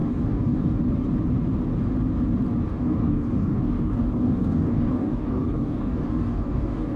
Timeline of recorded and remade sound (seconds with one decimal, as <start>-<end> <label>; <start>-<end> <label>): 0.0-0.8 remade; 0.8-2.7 recorded; 2.7-7.0 remade